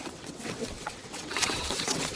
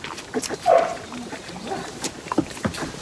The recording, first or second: second